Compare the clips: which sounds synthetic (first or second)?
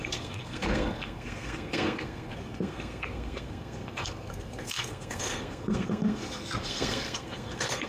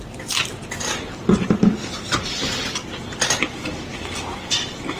first